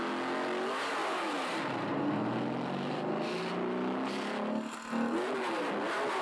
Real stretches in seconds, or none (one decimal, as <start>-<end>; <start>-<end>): 0.0-6.2